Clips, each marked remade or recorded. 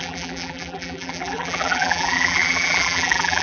remade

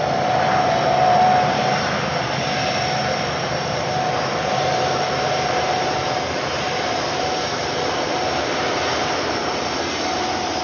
remade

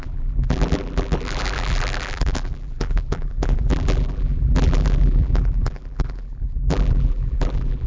remade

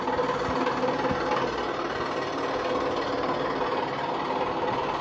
recorded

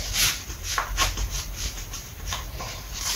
remade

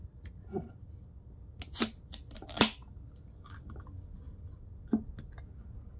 recorded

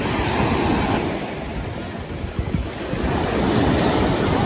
recorded